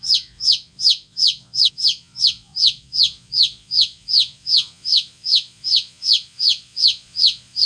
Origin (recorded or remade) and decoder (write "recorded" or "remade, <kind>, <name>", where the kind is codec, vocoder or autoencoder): remade, vocoder, Vocos